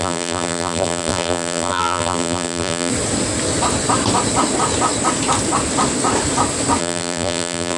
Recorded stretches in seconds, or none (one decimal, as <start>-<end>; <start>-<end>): 2.9-6.8